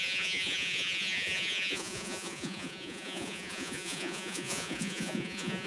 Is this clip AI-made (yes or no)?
yes